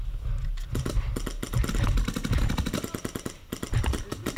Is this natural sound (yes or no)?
yes